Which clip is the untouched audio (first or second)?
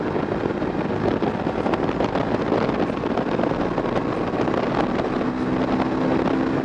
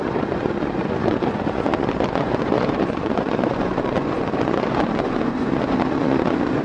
first